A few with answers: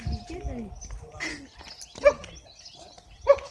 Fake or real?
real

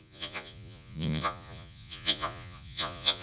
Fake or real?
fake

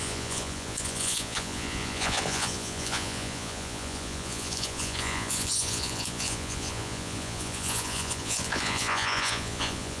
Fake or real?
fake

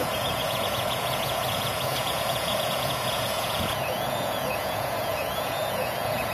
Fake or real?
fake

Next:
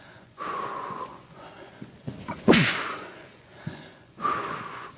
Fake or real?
fake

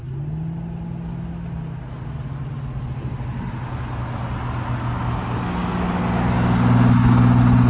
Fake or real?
real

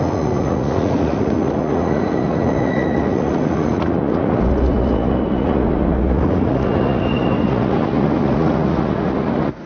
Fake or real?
fake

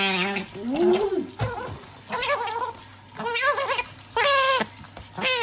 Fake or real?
real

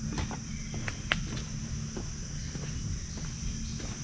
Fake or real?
real